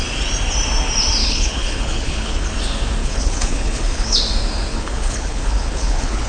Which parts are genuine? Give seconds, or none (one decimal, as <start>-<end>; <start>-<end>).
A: 0.0-1.2; 2.5-3.0; 4.2-4.7